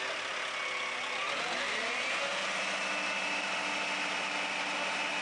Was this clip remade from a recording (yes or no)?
no